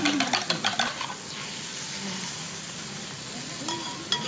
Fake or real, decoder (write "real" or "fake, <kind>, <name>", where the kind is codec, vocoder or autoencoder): real